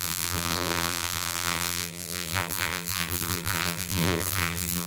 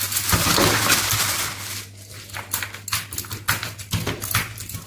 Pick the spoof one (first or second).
first